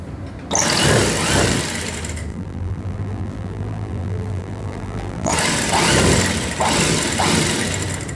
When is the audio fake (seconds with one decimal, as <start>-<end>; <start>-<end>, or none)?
2.3-5.3